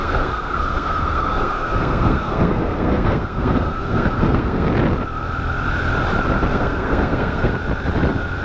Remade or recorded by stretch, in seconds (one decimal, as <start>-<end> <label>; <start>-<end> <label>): 0.0-4.7 remade; 4.7-6.5 recorded; 6.5-7.5 remade; 7.5-8.4 recorded